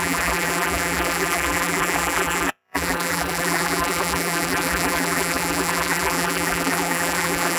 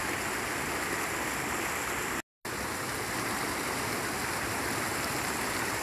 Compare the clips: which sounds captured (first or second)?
second